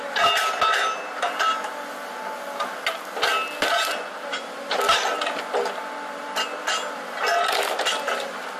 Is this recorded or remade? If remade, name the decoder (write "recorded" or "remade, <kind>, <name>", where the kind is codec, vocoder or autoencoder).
recorded